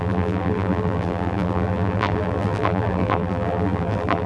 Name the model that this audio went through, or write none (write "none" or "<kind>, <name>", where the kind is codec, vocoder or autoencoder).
vocoder, BigVGAN v2